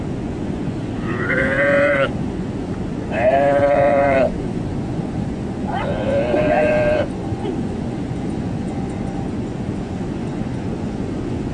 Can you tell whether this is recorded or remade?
remade